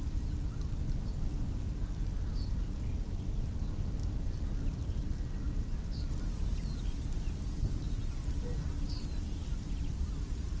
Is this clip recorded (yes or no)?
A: yes